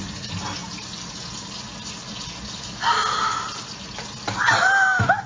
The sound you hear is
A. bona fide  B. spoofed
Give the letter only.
A